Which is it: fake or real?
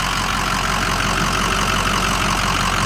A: real